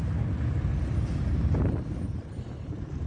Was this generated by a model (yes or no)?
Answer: no